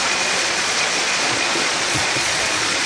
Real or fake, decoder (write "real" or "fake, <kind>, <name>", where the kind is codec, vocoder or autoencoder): fake, vocoder, Vocos